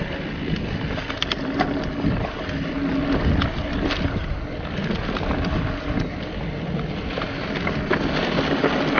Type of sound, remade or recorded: recorded